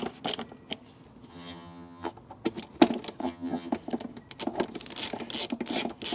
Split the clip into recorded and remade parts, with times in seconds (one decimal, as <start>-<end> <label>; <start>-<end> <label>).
0.0-1.3 recorded; 1.3-2.1 remade; 2.1-3.2 recorded; 3.2-3.7 remade; 3.7-6.1 recorded